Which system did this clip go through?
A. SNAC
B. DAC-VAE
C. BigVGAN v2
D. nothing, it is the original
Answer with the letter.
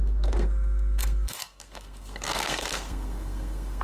A